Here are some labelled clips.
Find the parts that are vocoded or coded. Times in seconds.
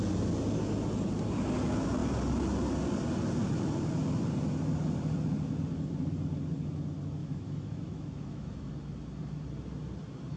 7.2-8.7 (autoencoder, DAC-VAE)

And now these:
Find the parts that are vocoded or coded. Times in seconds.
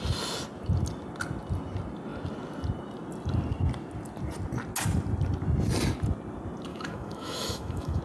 6.7-8.0 (autoencoder, DAC-VAE)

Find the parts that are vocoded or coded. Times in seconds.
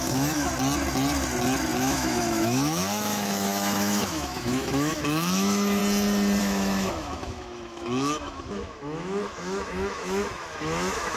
0.0-0.5 (autoencoder, DAC-VAE); 1.8-5.8; 6.4-11.2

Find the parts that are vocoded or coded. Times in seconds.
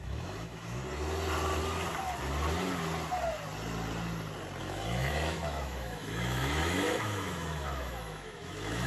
0.0-0.8 (autoencoder, DAC-VAE); 4.6-8.9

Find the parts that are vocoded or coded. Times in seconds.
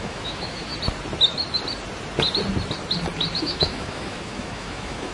0.0-0.7 (autoencoder, DAC-VAE); 3.4-5.1